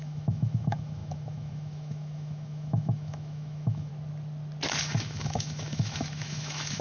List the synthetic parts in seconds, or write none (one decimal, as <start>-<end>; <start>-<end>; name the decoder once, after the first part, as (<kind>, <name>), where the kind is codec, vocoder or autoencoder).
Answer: 0.0-3.9 (autoencoder, DAC-VAE); 4.8-6.8